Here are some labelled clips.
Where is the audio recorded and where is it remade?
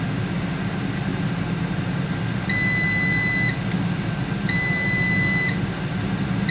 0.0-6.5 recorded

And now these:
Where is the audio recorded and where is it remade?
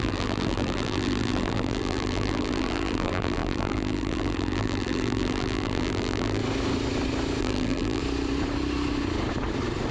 0.0-6.4 remade; 6.4-7.4 recorded; 7.4-8.0 remade; 8.0-9.9 recorded